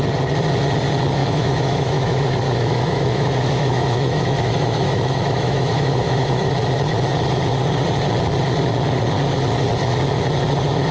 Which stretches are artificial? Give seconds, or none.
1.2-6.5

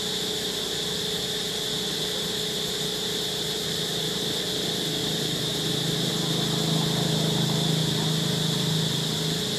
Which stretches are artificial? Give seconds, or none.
5.0-6.1

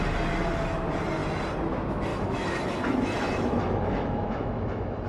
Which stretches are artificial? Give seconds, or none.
2.1-5.1

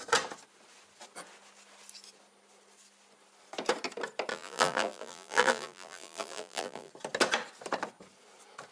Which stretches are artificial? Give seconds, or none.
4.3-6.9